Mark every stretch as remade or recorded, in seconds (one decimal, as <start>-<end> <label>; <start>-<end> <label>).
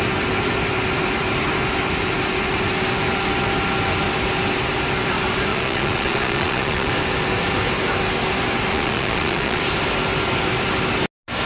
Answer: 0.0-5.5 recorded; 5.5-6.9 remade; 6.9-8.7 recorded; 8.7-9.6 remade; 9.6-11.5 recorded